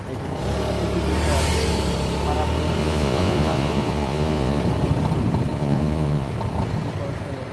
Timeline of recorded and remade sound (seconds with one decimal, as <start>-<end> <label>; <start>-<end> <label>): 0.0-2.8 recorded; 2.8-4.6 remade; 4.6-5.5 recorded; 5.5-6.3 remade; 6.3-7.5 recorded